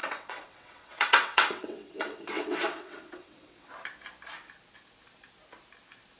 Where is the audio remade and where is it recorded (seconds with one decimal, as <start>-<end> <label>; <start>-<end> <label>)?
0.0-3.7 remade; 3.7-6.2 recorded